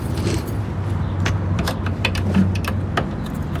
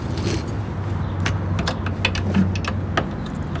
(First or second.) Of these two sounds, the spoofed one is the first